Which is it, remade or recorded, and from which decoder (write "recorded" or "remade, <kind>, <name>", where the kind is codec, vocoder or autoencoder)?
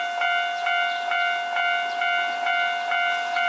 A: recorded